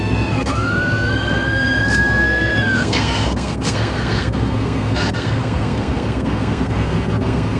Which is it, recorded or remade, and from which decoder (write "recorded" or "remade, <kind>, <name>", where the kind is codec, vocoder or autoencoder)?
remade, codec, SNAC